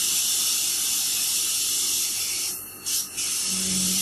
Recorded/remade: recorded